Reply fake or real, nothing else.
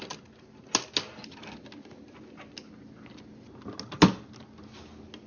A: real